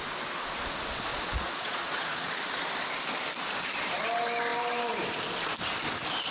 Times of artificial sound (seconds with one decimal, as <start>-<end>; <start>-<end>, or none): 1.1-2.3